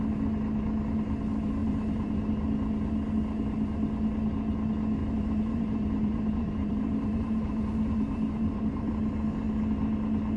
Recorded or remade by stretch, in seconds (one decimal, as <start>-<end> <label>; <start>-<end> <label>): 0.0-1.6 recorded; 1.6-2.3 remade; 2.3-5.0 recorded; 5.0-8.9 remade; 8.9-10.4 recorded